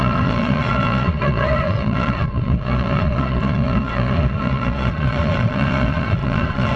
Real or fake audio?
fake